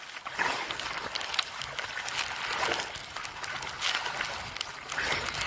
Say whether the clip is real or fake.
real